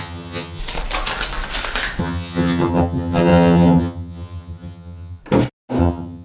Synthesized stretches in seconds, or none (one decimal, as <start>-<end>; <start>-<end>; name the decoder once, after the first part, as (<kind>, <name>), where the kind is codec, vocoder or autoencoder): 0.0-0.6 (vocoder, HiFi-GAN); 2.0-5.2; 5.8-6.2